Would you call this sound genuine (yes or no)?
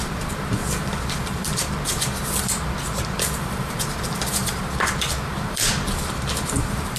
no